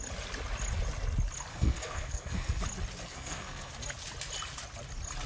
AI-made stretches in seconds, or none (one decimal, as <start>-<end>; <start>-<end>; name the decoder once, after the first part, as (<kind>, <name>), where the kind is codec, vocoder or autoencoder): 1.5-2.6 (codec, SNAC); 3.1-3.7